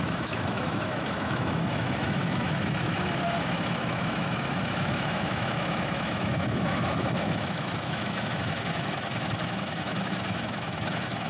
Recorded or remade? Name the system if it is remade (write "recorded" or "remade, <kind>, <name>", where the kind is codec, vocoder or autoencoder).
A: remade, autoencoder, DAC-VAE